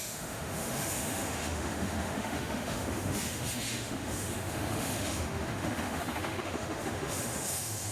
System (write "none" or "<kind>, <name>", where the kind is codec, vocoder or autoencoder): autoencoder, DAC-VAE